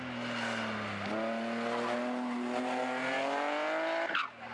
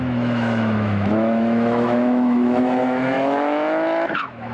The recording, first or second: first